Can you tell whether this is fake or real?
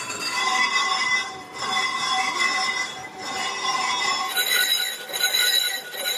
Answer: real